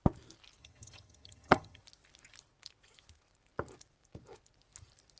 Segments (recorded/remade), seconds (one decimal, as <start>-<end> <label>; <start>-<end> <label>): 0.0-0.6 recorded; 0.6-1.8 remade; 1.8-5.2 recorded